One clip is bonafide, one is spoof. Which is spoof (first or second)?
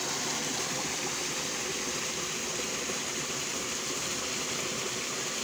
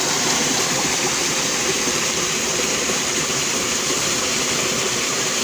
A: second